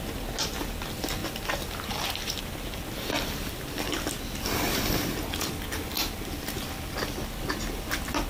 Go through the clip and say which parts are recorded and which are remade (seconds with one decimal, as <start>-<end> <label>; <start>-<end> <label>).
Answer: 0.0-8.3 recorded